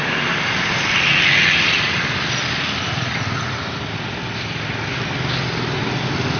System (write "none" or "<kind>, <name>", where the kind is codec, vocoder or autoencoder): none